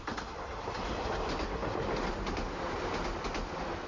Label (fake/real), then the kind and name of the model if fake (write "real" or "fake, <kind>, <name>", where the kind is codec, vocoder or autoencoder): real